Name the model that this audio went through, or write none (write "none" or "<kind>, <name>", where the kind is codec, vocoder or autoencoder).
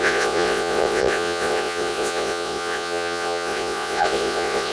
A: vocoder, Vocos